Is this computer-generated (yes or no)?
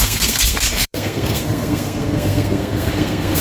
yes